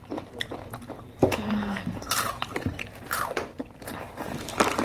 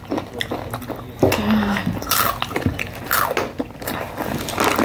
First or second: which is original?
second